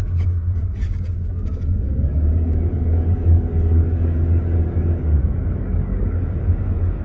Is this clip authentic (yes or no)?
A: no